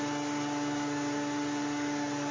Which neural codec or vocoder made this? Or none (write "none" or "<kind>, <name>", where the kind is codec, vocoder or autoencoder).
none